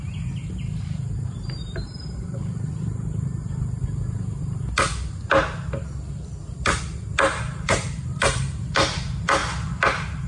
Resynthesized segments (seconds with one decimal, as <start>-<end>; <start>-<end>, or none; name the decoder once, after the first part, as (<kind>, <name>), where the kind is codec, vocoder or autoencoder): 0.0-4.7 (vocoder, BigVGAN v2); 7.3-10.3